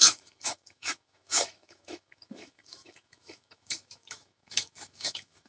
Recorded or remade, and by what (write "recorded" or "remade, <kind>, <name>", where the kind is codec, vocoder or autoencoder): remade, autoencoder, DAC-VAE